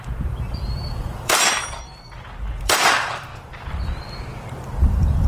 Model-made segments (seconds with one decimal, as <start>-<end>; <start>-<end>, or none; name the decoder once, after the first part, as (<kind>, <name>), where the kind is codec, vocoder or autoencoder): 0.0-1.6 (vocoder, BigVGAN v2); 2.6-3.3; 4.8-5.3